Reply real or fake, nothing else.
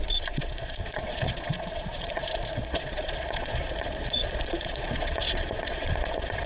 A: fake